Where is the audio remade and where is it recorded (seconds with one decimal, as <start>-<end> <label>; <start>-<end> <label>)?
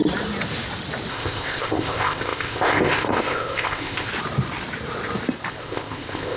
0.0-1.1 recorded; 1.1-4.1 remade; 4.1-5.5 recorded; 5.5-6.4 remade